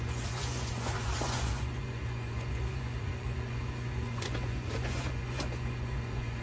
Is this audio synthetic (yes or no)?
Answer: yes